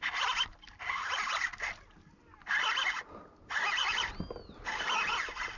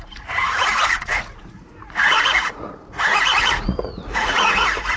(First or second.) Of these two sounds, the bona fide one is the first